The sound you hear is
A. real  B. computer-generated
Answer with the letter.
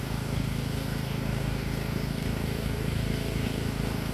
B